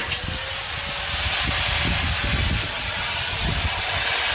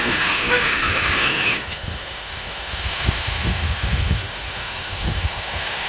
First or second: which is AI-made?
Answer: second